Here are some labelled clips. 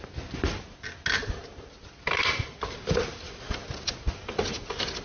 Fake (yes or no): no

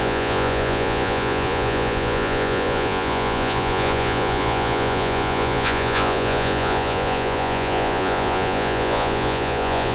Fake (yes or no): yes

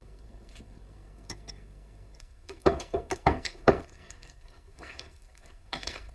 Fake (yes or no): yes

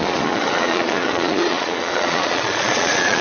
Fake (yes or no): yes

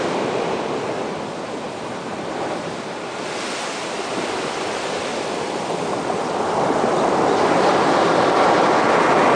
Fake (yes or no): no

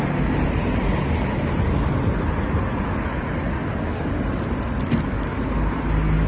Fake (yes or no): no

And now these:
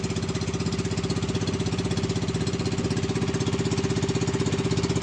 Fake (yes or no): no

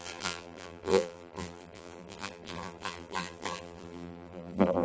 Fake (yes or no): yes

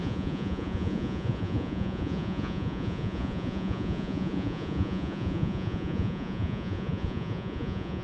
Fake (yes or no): yes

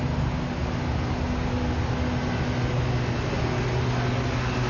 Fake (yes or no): no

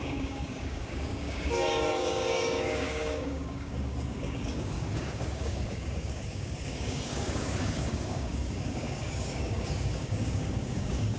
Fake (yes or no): yes